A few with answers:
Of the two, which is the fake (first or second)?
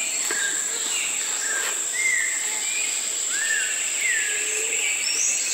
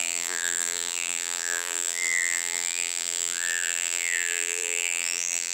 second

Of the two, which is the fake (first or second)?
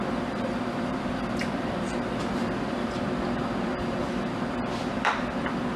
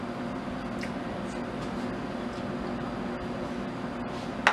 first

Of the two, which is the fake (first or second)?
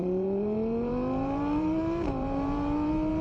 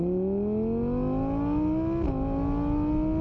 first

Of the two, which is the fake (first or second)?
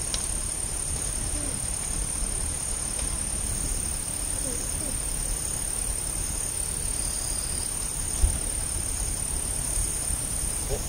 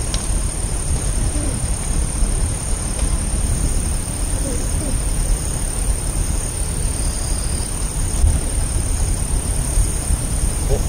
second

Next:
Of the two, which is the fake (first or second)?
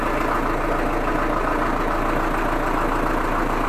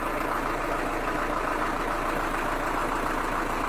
second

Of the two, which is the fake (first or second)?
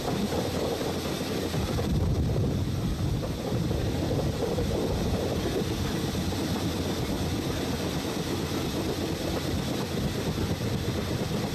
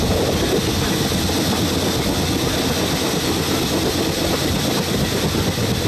first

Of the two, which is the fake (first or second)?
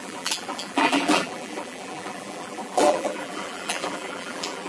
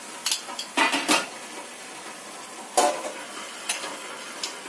first